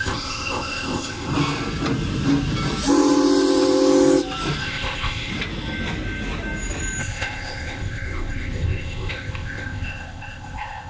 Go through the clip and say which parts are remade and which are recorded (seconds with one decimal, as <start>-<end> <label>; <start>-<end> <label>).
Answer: 0.0-1.3 remade; 1.3-4.6 recorded; 4.6-5.3 remade; 5.3-7.0 recorded; 7.0-10.9 remade